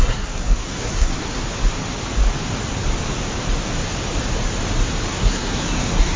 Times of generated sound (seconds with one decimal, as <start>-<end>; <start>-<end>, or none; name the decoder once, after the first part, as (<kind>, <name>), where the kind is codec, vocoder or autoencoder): 0.0-1.4 (codec, SNAC); 5.1-6.2